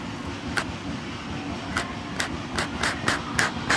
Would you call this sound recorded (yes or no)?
yes